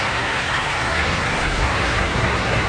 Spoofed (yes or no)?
yes